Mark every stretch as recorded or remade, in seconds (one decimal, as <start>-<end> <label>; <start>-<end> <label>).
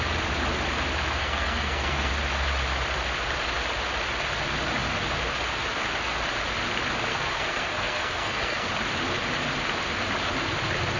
0.0-1.2 recorded; 1.2-2.1 remade; 2.1-7.1 recorded; 7.1-8.7 remade; 8.7-11.0 recorded